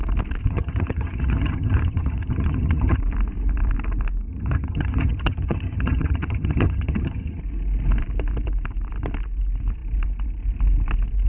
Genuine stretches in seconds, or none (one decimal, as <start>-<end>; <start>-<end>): 0.0-0.4; 3.0-4.3; 7.4-11.3